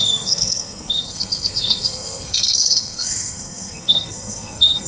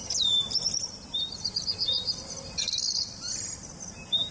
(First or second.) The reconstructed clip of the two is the first